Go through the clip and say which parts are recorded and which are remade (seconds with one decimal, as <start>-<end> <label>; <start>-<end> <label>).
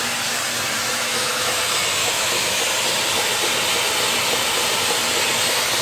0.0-1.1 recorded; 1.1-1.6 remade; 1.6-2.0 recorded; 2.0-2.6 remade; 2.6-5.8 recorded